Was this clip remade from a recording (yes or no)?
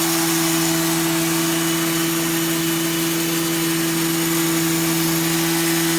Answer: no